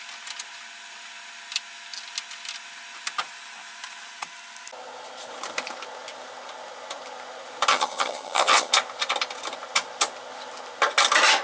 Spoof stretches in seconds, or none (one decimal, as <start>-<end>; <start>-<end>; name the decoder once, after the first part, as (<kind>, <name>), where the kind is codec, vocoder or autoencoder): 7.7-8.7 (vocoder, HiFi-GAN)